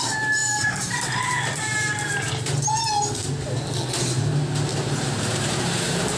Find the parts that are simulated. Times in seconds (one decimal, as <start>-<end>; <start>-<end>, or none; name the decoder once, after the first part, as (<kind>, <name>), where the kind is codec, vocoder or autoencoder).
0.4-2.3 (vocoder, BigVGAN v2); 4.7-6.2